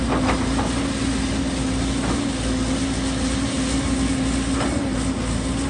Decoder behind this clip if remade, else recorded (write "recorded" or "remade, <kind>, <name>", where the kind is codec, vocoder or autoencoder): recorded